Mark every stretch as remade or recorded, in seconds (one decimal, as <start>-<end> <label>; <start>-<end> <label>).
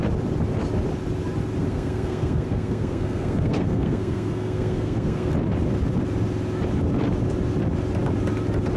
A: 0.0-1.6 recorded; 1.6-5.3 remade; 5.3-8.8 recorded